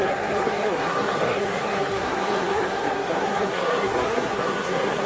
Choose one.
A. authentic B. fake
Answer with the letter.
B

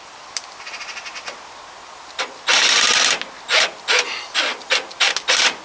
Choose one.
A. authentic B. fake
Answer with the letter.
A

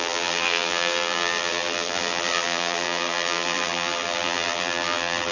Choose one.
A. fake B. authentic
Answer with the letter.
A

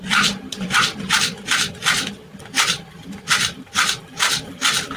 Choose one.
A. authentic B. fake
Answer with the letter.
A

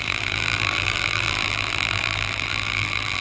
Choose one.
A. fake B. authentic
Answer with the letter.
A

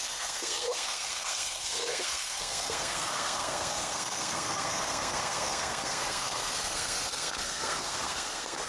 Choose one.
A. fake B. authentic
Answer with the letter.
A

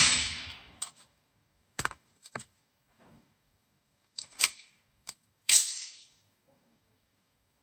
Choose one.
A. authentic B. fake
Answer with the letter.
B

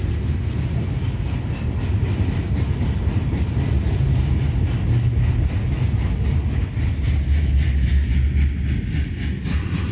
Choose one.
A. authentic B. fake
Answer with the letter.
A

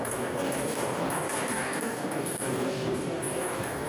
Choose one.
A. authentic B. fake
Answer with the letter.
B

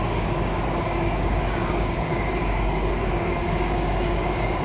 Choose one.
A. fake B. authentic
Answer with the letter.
A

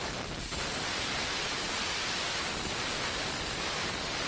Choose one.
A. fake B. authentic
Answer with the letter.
B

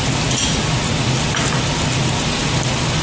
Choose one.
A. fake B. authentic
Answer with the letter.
B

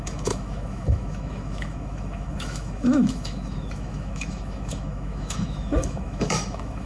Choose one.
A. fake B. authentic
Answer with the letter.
A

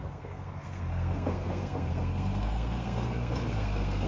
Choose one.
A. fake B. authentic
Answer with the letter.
A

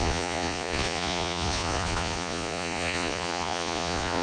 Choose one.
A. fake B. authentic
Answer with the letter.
A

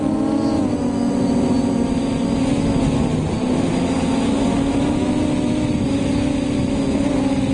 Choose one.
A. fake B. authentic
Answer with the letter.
B